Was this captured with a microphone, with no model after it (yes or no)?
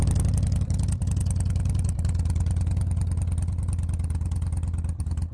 yes